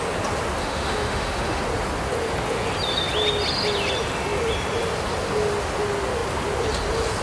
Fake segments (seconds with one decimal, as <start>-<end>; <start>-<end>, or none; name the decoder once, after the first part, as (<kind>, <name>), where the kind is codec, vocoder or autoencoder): 0.6-1.6 (autoencoder, DAC-VAE)